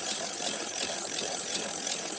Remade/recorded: remade